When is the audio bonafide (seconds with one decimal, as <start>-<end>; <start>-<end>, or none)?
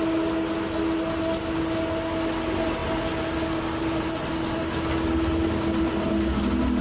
0.0-6.8